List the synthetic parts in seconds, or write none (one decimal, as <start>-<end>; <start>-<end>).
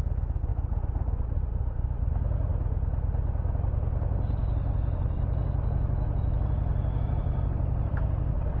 0.5-2.1; 6.7-8.0